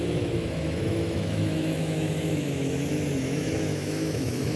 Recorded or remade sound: remade